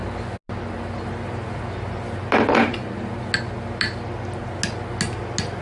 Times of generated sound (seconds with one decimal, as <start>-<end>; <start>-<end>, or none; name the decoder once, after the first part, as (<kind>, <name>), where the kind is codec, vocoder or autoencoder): none

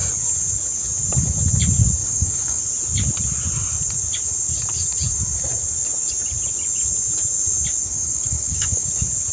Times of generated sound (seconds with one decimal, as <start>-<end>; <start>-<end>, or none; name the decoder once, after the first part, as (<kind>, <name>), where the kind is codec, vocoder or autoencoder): 2.0-2.6 (codec, DAC); 7.8-8.9

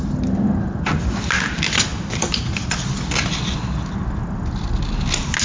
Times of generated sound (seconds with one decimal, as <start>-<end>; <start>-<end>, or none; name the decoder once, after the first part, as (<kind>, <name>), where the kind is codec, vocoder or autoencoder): none

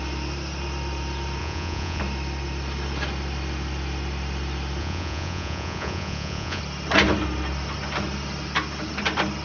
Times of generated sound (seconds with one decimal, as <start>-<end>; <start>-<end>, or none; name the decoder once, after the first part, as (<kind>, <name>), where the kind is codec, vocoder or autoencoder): 1.4-2.0 (vocoder, Vocos); 4.8-6.6

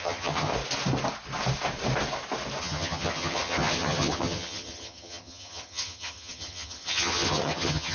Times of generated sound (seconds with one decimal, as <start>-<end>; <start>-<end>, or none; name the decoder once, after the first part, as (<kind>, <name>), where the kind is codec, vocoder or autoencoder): 0.0-0.5 (vocoder, HiFi-GAN); 2.6-7.9

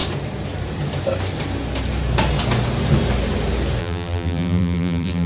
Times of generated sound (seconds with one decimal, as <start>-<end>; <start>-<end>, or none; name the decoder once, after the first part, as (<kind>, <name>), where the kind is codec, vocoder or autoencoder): 3.8-5.3 (vocoder, BigVGAN v2)